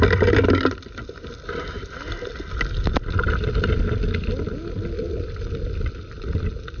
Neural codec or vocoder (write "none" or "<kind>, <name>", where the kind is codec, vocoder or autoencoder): none